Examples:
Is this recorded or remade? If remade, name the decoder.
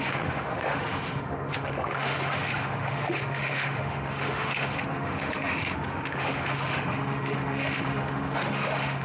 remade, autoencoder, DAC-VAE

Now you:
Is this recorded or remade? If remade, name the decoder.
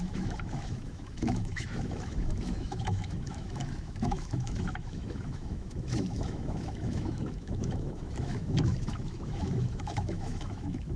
remade, autoencoder, DAC-VAE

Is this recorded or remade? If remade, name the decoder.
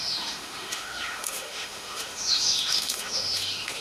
remade, autoencoder, DAC-VAE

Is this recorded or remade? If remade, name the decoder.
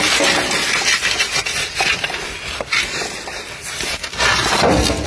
recorded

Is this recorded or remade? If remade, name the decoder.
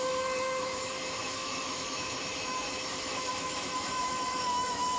remade, autoencoder, DAC-VAE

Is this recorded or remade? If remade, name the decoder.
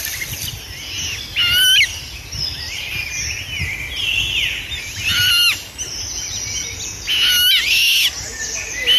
recorded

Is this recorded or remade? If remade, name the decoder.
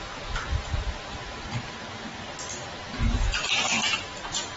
recorded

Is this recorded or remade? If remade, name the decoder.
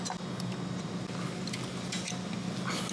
recorded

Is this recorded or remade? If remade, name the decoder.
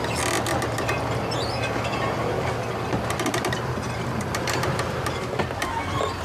recorded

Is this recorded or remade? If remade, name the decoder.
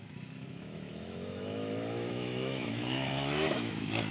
remade, autoencoder, DAC-VAE